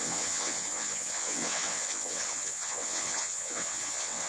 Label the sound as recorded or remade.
remade